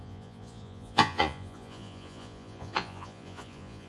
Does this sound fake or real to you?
fake